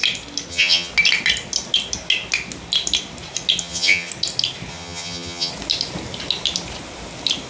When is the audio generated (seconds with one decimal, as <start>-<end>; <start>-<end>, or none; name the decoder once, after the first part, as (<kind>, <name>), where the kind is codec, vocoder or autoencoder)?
0.5-0.9 (vocoder, HiFi-GAN); 3.6-4.1; 4.7-5.5